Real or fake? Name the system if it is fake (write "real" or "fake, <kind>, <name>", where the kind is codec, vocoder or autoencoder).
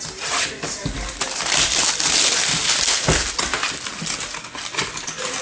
real